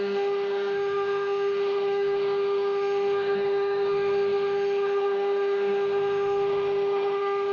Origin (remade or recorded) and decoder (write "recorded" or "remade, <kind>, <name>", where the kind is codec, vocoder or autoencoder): remade, autoencoder, DAC-VAE